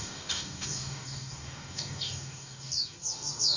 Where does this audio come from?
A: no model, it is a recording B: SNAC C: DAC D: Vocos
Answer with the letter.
C